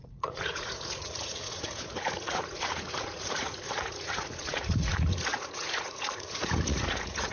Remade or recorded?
remade